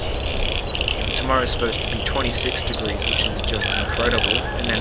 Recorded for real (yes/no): yes